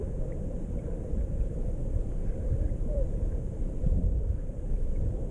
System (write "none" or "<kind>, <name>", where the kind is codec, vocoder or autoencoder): vocoder, BigVGAN v2